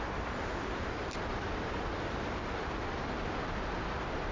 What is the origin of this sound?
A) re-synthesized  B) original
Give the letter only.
B